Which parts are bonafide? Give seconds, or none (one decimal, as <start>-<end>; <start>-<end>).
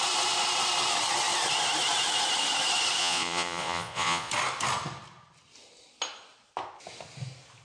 0.0-3.0; 4.3-7.6